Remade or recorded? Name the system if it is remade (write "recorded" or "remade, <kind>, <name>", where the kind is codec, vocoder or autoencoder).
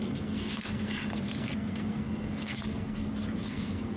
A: remade, codec, SNAC